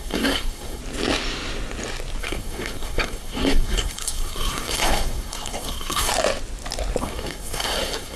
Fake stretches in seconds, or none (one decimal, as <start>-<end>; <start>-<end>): 0.0-0.8; 2.2-6.1; 7.0-8.2